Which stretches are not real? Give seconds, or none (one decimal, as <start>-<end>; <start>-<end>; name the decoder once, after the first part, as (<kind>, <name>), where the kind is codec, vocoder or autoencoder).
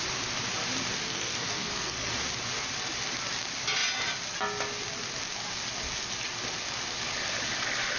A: 1.1-2.1 (codec, SNAC)